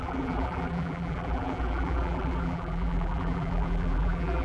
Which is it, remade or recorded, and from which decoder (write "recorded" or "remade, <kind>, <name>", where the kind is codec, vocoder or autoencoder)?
remade, vocoder, BigVGAN v2